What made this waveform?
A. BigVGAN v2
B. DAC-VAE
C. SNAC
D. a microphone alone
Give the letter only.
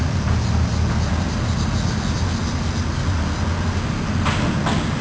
D